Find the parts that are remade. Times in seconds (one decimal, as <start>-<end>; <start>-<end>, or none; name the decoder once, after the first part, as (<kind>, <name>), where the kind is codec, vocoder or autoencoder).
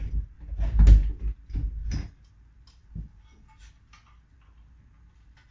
none